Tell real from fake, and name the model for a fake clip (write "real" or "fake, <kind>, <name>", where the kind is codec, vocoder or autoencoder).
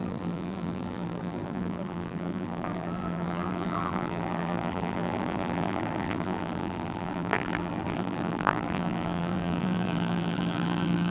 fake, vocoder, BigVGAN v2